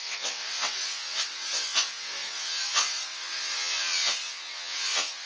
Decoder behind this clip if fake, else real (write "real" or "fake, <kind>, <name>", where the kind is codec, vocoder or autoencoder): fake, vocoder, WaveNeXt